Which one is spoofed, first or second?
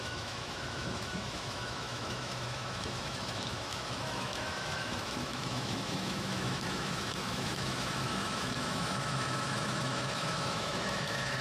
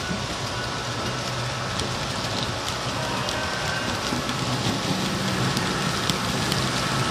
first